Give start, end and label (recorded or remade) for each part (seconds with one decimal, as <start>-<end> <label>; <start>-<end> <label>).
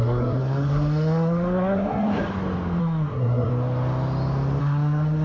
0.0-2.2 remade; 2.2-2.8 recorded; 2.8-3.5 remade; 3.5-4.6 recorded; 4.6-5.2 remade